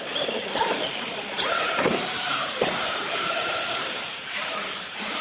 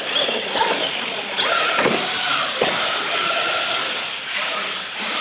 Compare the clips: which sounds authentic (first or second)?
second